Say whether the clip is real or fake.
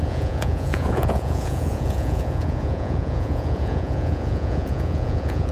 fake